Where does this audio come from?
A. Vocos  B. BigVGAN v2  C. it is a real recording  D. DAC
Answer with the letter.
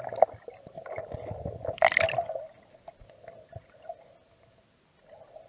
C